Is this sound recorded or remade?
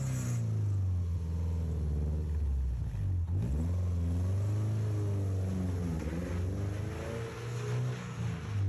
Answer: recorded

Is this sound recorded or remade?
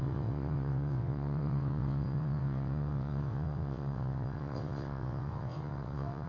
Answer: remade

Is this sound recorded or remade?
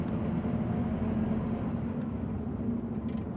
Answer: recorded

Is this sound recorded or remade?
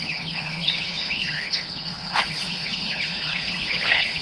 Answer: remade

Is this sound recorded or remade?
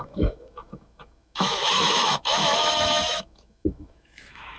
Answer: remade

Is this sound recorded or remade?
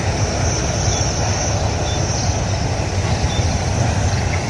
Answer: recorded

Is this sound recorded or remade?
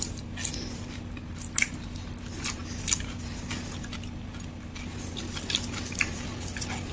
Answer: recorded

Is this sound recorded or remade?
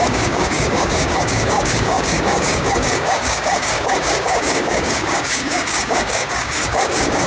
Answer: remade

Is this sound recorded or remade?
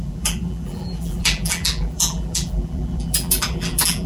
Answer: remade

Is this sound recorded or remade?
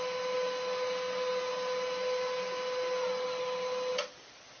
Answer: recorded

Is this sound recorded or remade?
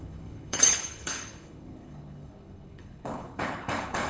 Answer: remade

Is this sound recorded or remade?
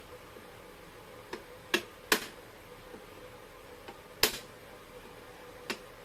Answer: recorded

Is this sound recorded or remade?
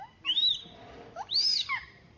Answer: recorded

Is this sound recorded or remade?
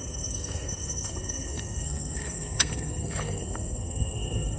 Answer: remade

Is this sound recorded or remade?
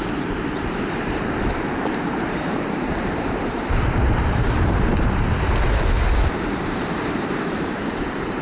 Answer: remade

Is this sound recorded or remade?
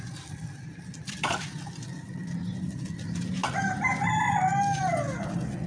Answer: recorded